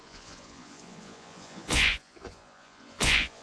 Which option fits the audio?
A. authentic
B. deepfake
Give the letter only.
B